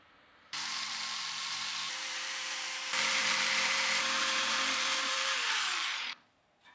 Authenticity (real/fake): fake